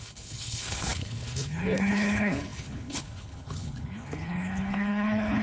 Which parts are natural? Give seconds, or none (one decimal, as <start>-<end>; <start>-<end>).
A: none

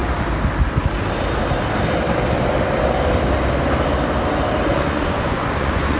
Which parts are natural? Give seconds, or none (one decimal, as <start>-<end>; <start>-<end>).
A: 0.0-4.7

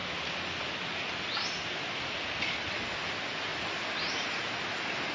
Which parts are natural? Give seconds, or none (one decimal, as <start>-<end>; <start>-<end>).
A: 0.0-3.5; 4.0-5.1

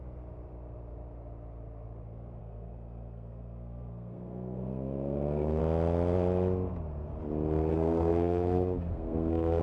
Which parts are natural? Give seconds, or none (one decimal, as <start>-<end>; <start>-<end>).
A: 0.0-2.4; 5.6-7.7

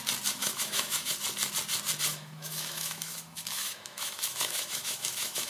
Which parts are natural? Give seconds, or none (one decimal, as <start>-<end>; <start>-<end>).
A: 0.0-0.4; 1.1-2.1

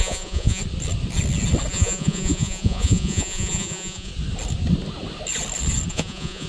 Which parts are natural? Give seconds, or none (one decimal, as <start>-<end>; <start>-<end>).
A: 0.6-1.7; 4.1-5.9